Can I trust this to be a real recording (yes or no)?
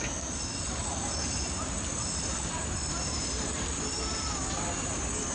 yes